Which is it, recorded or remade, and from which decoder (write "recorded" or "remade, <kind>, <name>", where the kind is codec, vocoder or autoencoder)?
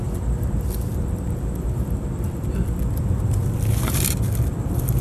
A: remade, vocoder, BigVGAN v2